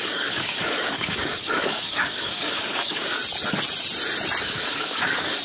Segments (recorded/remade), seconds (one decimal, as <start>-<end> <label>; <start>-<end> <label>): 0.0-3.2 remade; 3.2-4.4 recorded; 4.4-5.4 remade